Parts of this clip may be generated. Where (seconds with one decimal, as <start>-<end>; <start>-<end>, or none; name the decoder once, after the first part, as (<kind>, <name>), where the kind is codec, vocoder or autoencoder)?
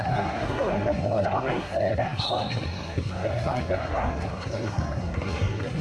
0.0-5.8 (codec, SNAC)